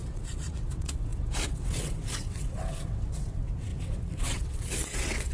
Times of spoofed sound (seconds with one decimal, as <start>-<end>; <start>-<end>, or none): 0.0-5.3